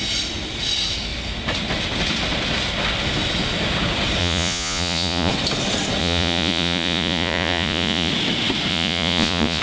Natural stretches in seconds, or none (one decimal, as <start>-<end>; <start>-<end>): 0.0-4.2; 5.3-6.0; 8.1-8.7